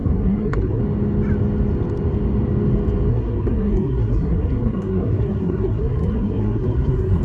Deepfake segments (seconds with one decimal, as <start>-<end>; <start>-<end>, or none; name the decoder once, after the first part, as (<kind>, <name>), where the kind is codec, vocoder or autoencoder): 0.0-0.8 (codec, SNAC); 3.1-7.2